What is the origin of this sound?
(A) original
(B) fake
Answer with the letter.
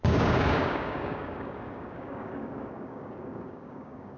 B